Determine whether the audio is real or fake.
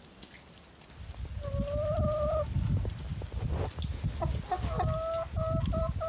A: real